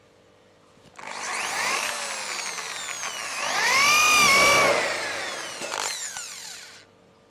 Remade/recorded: recorded